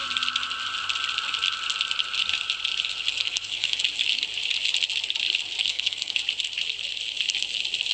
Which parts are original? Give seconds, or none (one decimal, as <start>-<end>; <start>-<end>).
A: 0.0-3.1; 3.8-5.6; 6.2-7.9